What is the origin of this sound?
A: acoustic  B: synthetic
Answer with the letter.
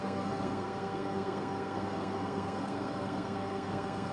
B